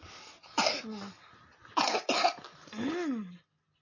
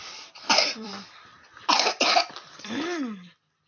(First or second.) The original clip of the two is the first